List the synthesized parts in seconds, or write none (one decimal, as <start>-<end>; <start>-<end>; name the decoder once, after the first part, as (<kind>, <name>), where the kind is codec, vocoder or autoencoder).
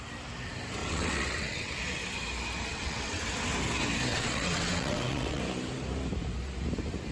0.8-1.7 (vocoder, WaveNeXt); 2.7-3.2; 4.1-5.4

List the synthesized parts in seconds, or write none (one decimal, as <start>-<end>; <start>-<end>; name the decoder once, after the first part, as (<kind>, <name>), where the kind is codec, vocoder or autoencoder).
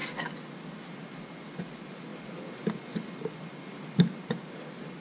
none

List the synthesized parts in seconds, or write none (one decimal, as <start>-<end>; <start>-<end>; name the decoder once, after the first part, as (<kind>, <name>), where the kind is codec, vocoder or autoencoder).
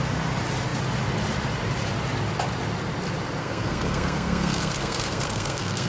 3.4-5.9 (codec, SNAC)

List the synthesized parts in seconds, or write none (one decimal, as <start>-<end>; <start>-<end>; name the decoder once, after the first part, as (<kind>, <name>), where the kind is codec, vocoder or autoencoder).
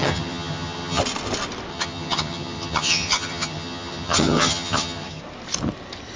0.0-1.0 (vocoder, HiFi-GAN); 1.7-5.2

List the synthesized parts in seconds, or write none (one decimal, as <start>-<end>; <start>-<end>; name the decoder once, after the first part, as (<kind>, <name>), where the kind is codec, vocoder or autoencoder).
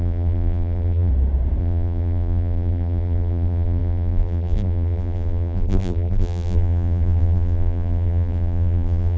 0.0-1.1 (vocoder, BigVGAN v2); 1.6-9.2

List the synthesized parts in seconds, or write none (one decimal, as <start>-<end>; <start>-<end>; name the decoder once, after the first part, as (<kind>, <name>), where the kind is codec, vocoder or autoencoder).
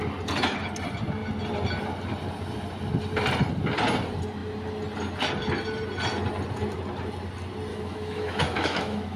7.7-9.2 (autoencoder, DAC-VAE)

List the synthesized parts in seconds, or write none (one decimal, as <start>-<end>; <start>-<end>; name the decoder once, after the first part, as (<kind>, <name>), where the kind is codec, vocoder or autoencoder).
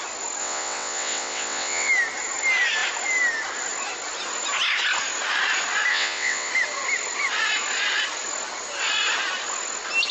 0.4-1.9 (vocoder, WaveNeXt); 5.9-6.5